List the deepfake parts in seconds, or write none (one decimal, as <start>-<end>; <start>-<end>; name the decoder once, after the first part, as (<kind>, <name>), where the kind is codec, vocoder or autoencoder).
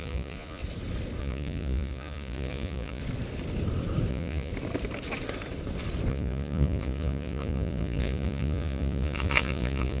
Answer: 0.0-0.6 (vocoder, Vocos); 1.2-3.0; 4.1-4.5; 6.1-10.0